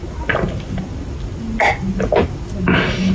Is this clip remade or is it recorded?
recorded